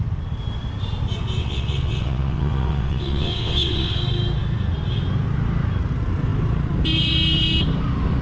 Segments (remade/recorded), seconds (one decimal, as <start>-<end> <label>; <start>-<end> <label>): 0.0-1.4 recorded; 1.4-4.0 remade; 4.0-8.2 recorded